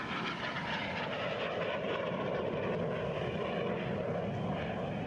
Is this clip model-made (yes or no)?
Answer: no